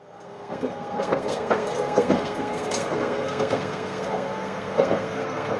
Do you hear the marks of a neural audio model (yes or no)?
yes